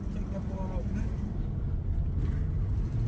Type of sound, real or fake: real